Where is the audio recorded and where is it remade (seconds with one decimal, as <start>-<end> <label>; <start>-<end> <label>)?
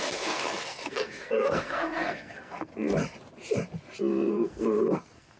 0.0-2.7 remade; 2.7-4.3 recorded; 4.3-5.4 remade